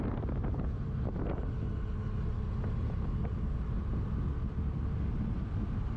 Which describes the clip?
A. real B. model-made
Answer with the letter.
A